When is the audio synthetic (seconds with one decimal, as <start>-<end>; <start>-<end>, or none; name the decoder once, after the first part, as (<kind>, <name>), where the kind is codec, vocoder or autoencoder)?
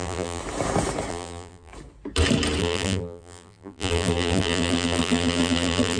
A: 0.0-0.4 (vocoder, BigVGAN v2); 1.1-1.7; 2.6-6.0